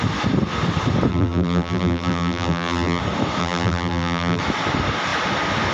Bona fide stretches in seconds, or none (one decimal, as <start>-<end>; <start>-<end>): 0.0-1.1; 3.0-3.4; 4.4-5.7